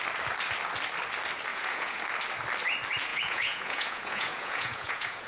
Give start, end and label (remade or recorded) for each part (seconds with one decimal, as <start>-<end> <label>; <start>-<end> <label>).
0.0-1.5 recorded; 1.5-2.0 remade; 2.0-3.1 recorded; 3.1-5.3 remade